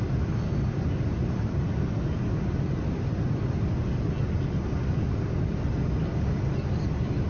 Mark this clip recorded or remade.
recorded